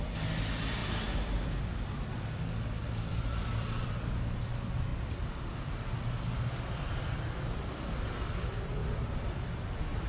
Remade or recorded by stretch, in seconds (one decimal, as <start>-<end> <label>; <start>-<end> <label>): 0.0-0.8 recorded; 0.8-2.4 remade; 2.4-2.8 recorded; 2.8-3.9 remade; 3.9-4.9 recorded; 4.9-5.5 remade; 5.5-8.8 recorded; 8.8-9.5 remade; 9.5-10.1 recorded